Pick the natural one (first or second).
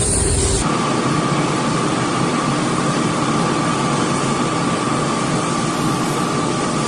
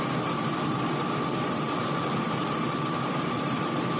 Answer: first